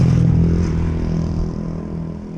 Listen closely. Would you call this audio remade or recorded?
recorded